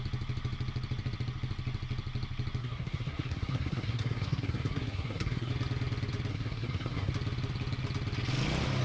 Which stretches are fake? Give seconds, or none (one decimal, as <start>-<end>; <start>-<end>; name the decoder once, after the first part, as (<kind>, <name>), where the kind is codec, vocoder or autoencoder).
2.6-5.5 (codec, SNAC); 6.3-7.1

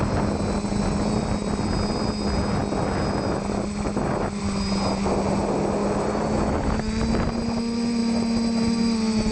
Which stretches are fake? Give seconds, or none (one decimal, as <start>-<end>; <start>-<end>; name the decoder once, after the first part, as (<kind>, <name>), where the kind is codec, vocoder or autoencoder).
none

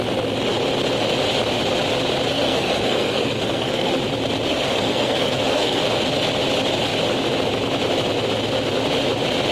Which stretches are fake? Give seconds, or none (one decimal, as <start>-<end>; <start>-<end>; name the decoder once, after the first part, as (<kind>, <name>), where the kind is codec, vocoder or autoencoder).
2.3-3.9 (codec, SNAC); 4.5-5.8

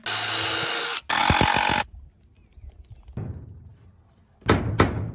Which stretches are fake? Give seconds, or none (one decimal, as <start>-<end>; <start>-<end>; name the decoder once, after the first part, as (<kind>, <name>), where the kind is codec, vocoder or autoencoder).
none

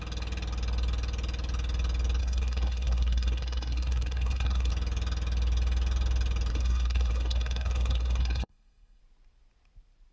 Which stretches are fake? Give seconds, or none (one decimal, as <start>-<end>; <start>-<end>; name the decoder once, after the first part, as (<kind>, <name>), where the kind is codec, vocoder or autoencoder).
2.2-4.7 (codec, SNAC); 6.5-9.0

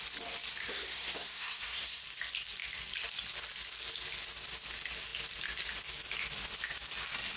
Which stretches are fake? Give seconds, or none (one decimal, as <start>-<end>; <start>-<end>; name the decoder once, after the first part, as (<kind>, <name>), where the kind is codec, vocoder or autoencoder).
0.7-2.0 (codec, SNAC)

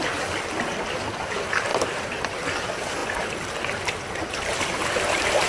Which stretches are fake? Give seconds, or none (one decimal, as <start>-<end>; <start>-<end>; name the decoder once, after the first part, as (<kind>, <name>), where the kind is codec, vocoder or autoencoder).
0.0-5.5 (vocoder, BigVGAN v2)

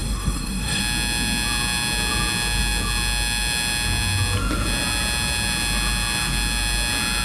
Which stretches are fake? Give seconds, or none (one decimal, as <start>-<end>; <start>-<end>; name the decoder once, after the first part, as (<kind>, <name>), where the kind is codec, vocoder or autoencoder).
0.0-0.8 (codec, SNAC)